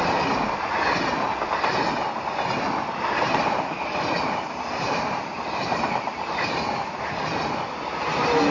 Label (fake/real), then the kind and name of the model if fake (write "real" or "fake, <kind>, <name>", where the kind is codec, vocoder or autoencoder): real